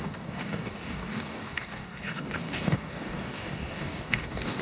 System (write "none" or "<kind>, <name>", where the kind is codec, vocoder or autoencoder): codec, DAC